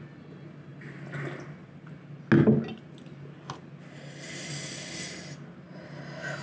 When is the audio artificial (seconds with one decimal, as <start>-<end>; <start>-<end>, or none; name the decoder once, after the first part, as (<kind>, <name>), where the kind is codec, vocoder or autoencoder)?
none